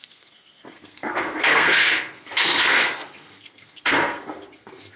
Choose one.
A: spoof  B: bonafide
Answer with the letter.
A